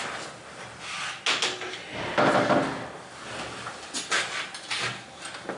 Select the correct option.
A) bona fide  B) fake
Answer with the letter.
A